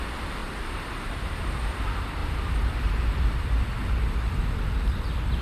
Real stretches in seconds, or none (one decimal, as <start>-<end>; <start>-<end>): 0.0-0.4; 1.5-2.2; 2.9-5.4